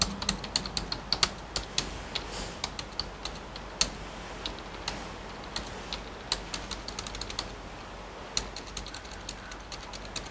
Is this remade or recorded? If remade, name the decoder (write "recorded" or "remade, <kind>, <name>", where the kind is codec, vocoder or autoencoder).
recorded